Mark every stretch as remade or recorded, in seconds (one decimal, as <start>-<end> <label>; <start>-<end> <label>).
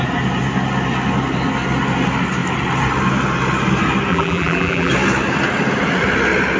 0.0-4.1 recorded; 4.1-4.9 remade; 4.9-6.6 recorded